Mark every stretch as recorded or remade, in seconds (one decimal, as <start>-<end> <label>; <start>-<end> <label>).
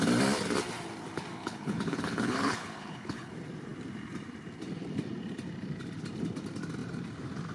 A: 0.0-1.4 recorded; 1.4-3.3 remade; 3.3-7.5 recorded